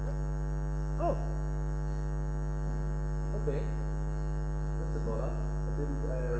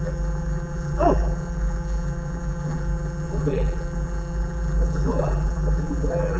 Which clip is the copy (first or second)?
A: second